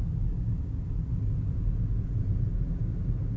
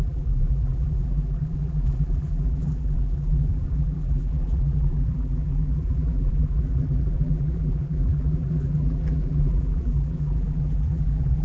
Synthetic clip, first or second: second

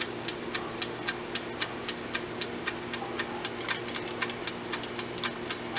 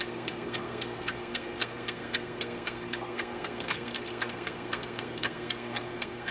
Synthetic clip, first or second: second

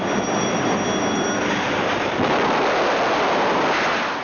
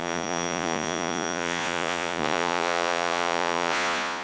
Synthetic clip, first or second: second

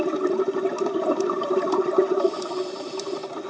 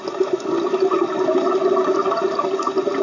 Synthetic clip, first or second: first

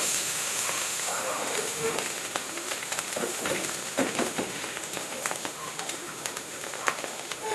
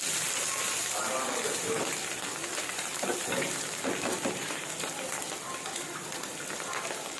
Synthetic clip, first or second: first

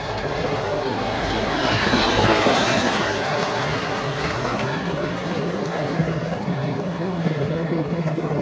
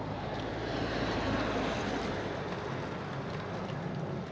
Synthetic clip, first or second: first